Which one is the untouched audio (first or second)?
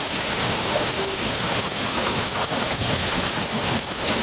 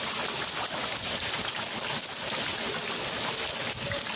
second